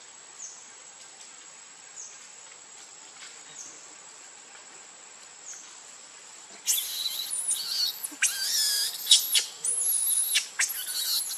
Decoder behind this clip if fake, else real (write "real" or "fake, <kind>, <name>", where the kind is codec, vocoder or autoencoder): real